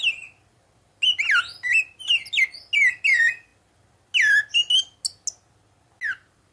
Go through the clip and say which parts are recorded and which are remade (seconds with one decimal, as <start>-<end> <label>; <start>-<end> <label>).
0.0-6.5 recorded